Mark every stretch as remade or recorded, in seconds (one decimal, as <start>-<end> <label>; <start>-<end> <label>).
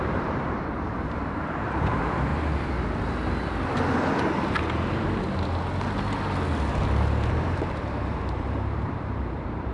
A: 0.0-2.3 remade; 2.3-7.3 recorded; 7.3-9.7 remade